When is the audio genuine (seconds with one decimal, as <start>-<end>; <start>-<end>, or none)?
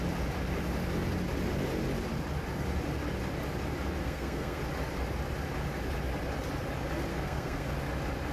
0.0-4.0; 4.6-7.1; 7.7-8.3